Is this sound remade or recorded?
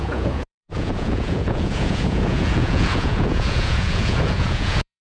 remade